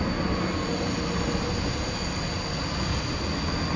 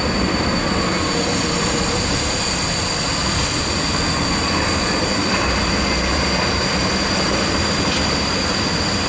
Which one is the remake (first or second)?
second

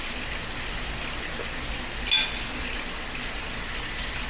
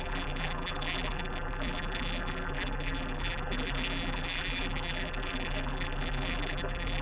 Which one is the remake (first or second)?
second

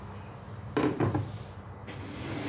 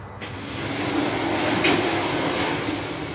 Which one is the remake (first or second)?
first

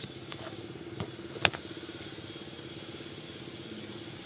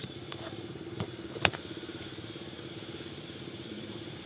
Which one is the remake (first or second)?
second